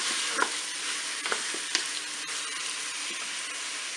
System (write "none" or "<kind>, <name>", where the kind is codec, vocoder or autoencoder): none